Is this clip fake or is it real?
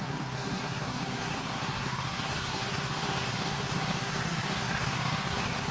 fake